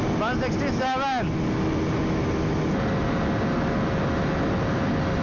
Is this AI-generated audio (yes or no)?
no